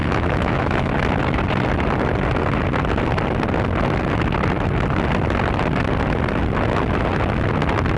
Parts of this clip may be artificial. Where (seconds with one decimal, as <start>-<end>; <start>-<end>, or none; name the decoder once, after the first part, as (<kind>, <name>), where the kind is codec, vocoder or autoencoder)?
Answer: 0.0-0.9 (autoencoder, DAC-VAE)